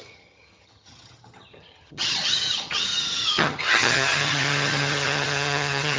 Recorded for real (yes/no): no